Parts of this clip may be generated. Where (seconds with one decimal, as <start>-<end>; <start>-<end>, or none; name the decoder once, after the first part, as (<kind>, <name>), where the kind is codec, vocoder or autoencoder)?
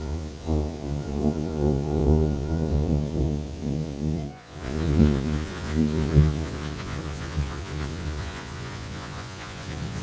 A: 0.0-10.0 (vocoder, Vocos)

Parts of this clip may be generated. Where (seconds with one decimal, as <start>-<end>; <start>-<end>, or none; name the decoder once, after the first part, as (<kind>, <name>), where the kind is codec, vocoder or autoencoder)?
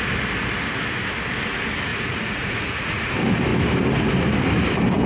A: 1.9-3.1 (vocoder, Vocos)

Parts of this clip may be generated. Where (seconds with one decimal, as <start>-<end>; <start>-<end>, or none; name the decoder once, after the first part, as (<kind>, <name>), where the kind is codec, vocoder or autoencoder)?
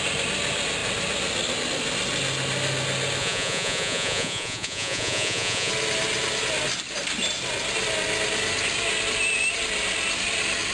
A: 3.2-5.7 (vocoder, Vocos)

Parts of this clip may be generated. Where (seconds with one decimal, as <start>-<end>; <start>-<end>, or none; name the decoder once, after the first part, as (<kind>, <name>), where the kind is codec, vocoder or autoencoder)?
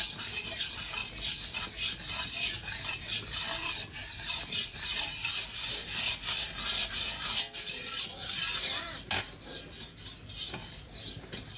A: none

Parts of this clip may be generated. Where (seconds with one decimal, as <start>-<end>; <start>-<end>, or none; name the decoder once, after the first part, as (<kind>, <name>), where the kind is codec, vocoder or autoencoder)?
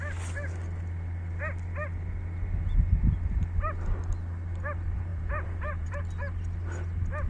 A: 5.1-6.0 (vocoder, Vocos)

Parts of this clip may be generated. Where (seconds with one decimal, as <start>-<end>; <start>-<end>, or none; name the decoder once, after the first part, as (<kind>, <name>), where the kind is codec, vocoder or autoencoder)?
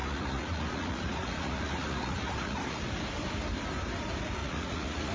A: 0.0-2.8 (vocoder, Vocos); 4.4-5.1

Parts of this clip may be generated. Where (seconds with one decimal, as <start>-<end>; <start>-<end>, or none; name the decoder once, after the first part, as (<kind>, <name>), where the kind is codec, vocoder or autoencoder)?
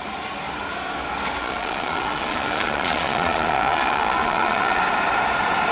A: 1.4-4.8 (vocoder, Vocos)